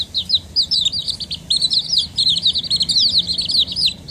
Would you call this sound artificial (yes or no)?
no